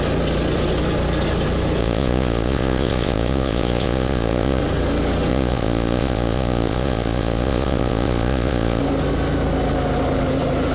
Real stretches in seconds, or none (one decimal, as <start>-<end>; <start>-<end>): 0.0-1.8; 4.6-5.3; 8.8-10.7